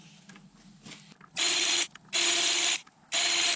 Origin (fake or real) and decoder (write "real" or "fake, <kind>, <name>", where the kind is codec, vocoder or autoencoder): real